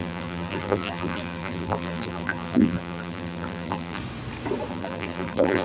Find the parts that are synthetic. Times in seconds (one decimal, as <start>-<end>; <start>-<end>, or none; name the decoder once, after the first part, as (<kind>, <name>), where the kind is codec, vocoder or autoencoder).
0.0-4.0 (vocoder, BigVGAN v2); 4.7-5.6